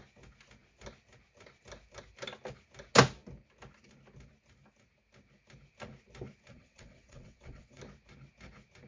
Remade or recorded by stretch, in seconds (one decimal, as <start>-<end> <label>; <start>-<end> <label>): 0.0-6.5 recorded; 6.5-7.8 remade; 7.8-8.9 recorded